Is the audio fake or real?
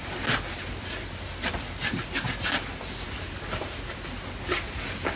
real